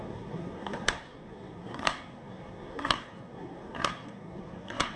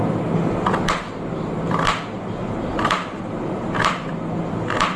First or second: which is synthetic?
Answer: first